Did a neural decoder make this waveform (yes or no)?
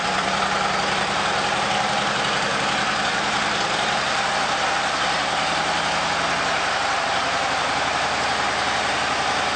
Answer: yes